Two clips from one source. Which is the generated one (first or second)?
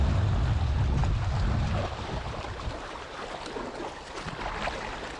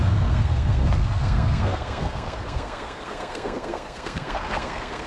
second